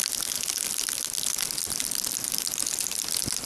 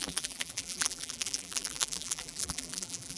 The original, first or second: first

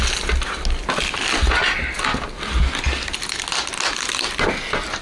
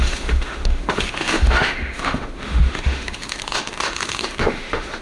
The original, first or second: first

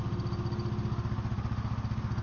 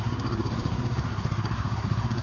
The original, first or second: first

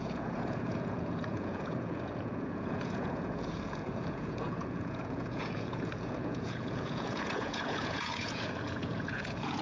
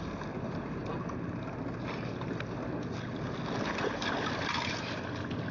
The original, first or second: second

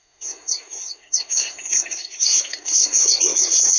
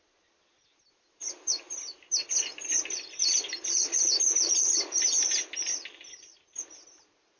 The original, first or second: second